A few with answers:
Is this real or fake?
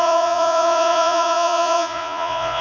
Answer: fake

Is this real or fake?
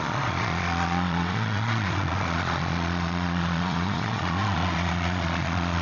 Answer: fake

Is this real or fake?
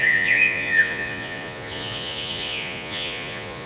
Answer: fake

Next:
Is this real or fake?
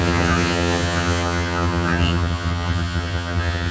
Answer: fake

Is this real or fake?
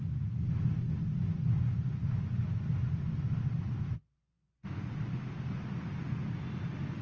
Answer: real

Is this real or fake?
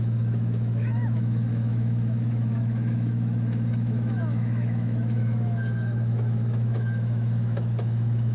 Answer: fake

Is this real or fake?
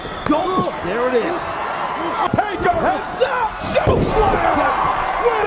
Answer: real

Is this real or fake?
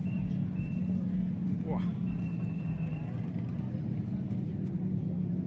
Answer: real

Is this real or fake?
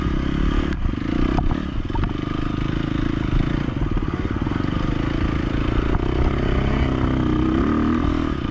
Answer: real